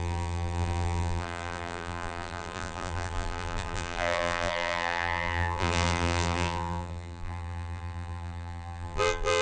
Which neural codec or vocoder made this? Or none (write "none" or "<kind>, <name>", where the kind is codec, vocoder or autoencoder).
vocoder, BigVGAN v2